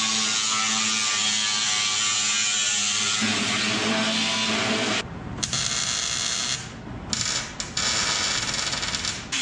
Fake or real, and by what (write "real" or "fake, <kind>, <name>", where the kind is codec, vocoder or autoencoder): real